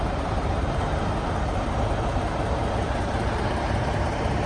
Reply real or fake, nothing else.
fake